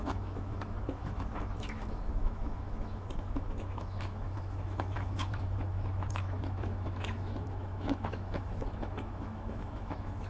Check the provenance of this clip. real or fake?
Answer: fake